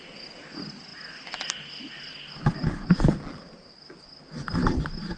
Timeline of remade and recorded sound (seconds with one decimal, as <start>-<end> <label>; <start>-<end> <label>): 0.0-5.2 recorded